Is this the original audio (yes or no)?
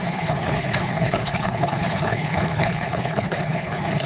no